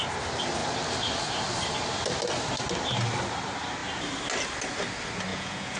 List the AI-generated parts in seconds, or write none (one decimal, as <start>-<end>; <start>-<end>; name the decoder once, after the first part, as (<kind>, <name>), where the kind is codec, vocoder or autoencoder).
5.3-5.8 (vocoder, Vocos)